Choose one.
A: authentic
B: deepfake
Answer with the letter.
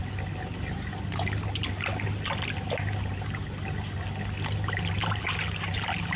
A